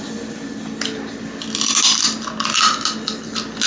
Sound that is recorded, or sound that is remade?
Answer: recorded